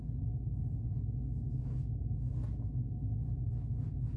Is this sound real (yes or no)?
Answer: yes